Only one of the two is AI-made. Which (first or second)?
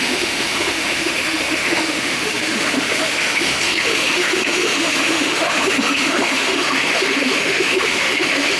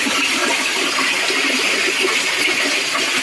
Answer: first